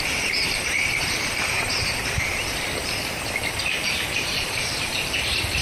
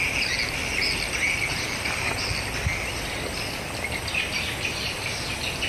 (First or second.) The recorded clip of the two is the second